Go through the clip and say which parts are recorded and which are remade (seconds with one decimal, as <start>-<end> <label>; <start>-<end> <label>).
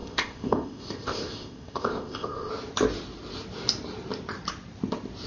0.0-2.5 remade; 2.5-5.3 recorded